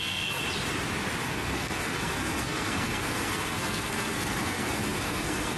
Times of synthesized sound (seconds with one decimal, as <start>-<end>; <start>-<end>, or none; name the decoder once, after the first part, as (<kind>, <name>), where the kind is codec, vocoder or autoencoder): 0.0-0.4 (codec, SNAC); 1.2-5.6

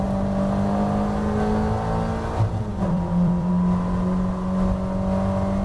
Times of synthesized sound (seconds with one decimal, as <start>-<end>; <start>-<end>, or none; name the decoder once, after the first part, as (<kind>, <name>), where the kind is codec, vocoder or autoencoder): 2.7-3.5 (vocoder, BigVGAN v2)

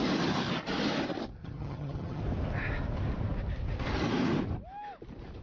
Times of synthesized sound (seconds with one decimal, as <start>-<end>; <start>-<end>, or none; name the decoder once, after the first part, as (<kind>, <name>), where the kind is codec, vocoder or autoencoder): 1.4-2.2 (vocoder, HiFi-GAN)

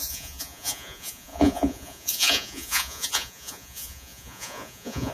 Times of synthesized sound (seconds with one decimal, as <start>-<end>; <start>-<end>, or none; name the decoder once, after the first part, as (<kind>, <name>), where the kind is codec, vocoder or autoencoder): 0.0-5.1 (vocoder, Vocos)

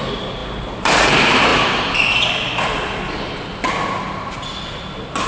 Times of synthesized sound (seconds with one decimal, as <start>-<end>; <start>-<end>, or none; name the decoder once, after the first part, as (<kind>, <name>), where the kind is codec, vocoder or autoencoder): none

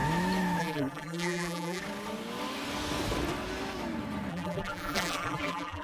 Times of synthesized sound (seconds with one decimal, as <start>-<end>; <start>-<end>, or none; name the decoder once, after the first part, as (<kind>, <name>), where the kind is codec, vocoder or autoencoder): 0.6-1.8 (vocoder, BigVGAN v2); 4.3-5.8